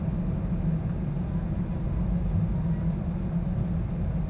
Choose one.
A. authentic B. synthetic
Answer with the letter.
A